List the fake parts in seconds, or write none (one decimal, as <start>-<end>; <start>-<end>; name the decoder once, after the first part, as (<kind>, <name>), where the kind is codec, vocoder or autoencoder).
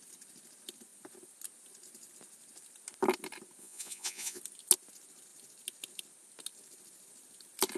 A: 3.6-4.4 (vocoder, Vocos)